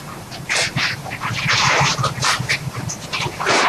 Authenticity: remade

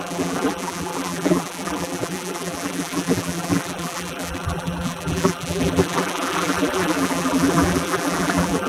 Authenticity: remade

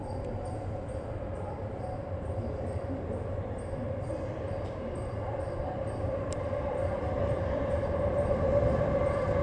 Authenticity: remade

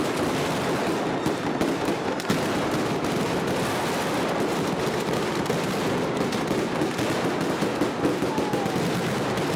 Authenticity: recorded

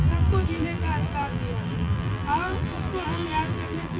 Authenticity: remade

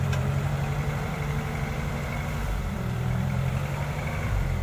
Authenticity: remade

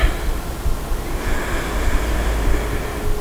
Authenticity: recorded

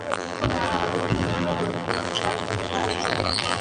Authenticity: remade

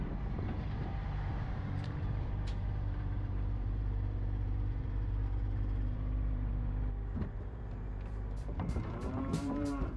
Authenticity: remade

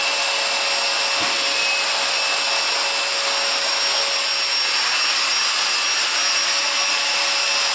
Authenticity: recorded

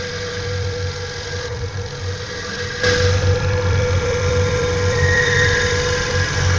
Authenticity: remade